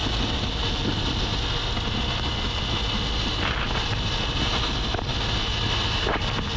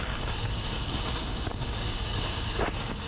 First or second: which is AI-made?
second